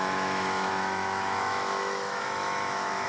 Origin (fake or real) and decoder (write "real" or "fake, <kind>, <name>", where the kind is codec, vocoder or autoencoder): fake, autoencoder, DAC-VAE